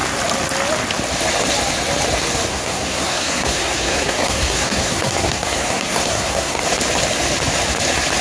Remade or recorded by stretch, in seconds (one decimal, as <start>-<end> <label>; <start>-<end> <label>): 0.0-2.5 recorded; 2.5-6.6 remade; 6.6-8.2 recorded